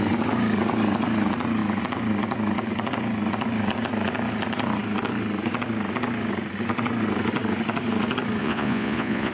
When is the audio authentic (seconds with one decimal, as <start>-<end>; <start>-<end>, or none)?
0.0-8.4